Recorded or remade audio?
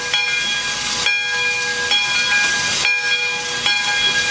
recorded